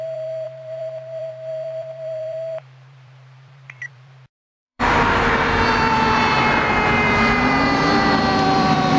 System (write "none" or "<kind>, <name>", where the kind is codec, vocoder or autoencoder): vocoder, BigVGAN v2